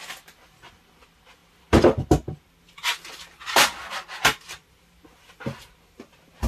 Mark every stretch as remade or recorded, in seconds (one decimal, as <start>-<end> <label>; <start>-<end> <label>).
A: 0.0-6.5 recorded